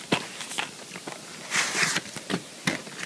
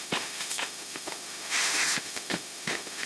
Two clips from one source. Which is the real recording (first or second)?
first